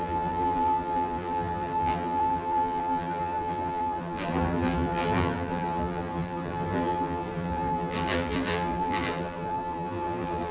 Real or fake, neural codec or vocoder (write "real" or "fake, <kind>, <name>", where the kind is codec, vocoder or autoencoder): fake, vocoder, BigVGAN v2